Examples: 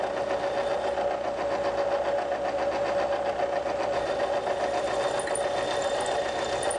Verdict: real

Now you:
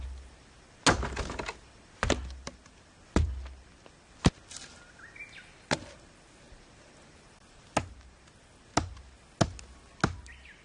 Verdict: real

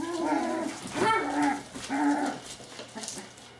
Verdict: real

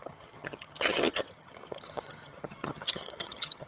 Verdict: fake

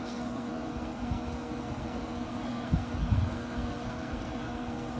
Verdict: fake